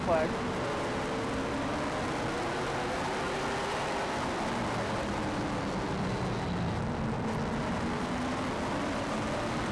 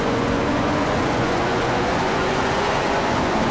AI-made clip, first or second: second